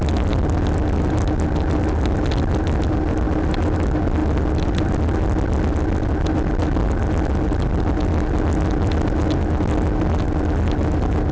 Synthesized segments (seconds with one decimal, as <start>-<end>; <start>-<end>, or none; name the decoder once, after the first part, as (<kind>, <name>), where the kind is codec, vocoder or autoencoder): none